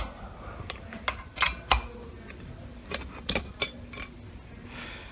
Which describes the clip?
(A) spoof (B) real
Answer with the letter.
B